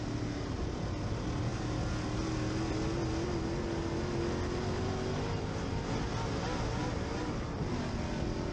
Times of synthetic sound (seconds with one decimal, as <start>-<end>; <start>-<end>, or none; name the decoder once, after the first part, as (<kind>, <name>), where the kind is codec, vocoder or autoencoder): none